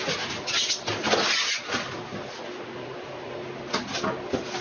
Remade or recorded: recorded